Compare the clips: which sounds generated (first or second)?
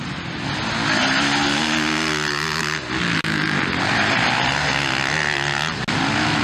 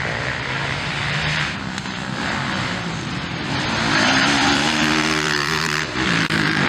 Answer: second